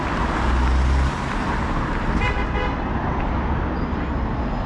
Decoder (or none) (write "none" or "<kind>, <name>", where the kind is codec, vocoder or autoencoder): none